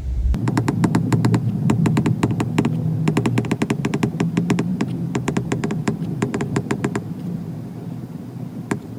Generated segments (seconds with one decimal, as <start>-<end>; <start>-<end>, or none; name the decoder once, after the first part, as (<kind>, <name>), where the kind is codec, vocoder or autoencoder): 4.7-5.3 (vocoder, BigVGAN v2); 5.8-6.6